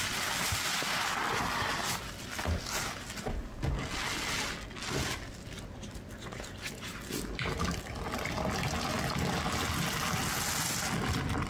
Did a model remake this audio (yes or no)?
no